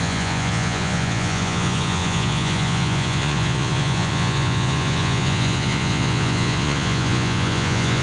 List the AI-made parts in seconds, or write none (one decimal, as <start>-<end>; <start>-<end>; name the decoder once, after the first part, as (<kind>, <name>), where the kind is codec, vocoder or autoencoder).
0.0-8.0 (vocoder, Vocos)